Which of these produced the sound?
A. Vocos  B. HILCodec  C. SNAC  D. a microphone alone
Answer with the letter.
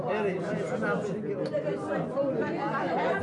D